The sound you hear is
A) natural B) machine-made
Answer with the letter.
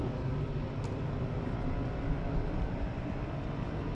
A